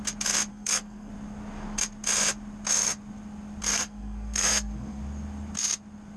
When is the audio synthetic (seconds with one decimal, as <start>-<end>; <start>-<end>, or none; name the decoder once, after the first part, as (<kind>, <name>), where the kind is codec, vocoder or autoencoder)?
0.5-1.1 (codec, SNAC); 3.7-5.0